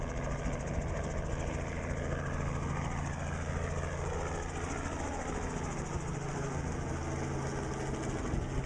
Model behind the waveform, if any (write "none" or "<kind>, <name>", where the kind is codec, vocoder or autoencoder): none